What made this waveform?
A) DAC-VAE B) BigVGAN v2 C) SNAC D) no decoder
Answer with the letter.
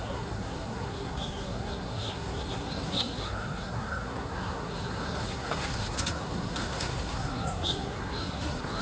C